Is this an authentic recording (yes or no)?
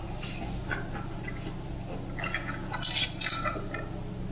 yes